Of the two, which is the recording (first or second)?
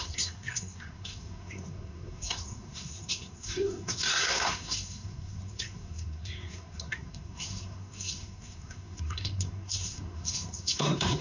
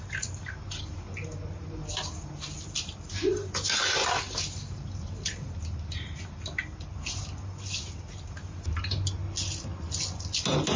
second